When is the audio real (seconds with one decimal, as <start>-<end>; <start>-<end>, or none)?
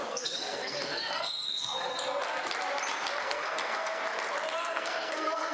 1.9-3.2; 4.0-4.6